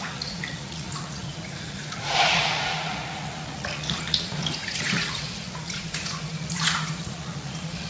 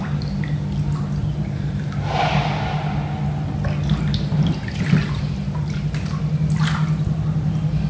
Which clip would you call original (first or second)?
second